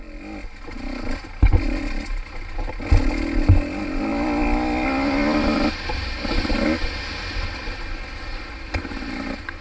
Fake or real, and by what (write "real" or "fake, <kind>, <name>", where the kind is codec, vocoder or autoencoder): real